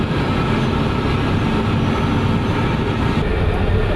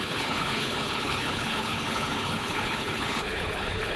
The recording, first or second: first